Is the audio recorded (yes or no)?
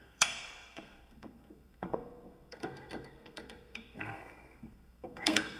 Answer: no